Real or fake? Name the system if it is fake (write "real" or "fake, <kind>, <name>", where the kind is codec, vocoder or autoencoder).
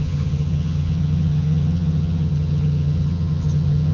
fake, vocoder, HiFi-GAN